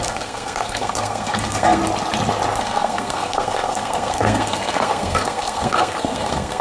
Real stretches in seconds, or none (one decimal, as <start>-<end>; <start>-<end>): 1.8-2.6

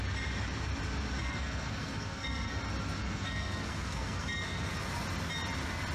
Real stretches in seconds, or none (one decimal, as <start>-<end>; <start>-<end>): 0.0-1.2; 2.6-3.0; 4.7-5.9

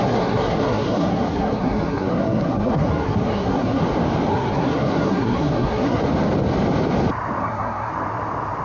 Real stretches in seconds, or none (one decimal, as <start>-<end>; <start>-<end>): 3.8-4.3; 6.0-7.4; 7.9-8.6

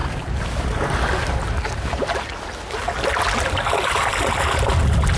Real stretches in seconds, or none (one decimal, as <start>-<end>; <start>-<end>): 0.0-5.2

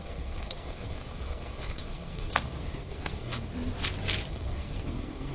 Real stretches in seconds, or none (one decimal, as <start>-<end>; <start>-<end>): 3.5-4.3

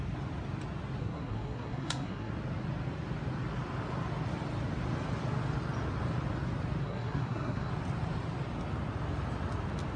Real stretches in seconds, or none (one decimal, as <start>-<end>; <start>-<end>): 0.0-1.0; 2.3-6.8; 7.7-10.0